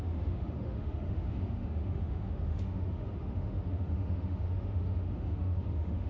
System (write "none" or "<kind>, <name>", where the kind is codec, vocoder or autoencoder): autoencoder, DAC-VAE